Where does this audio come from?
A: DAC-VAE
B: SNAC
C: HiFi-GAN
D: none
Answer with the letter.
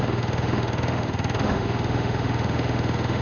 A